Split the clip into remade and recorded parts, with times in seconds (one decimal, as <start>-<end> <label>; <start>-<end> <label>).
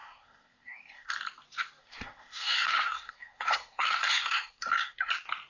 0.0-1.1 remade; 1.1-1.8 recorded; 1.8-5.1 remade; 5.1-5.5 recorded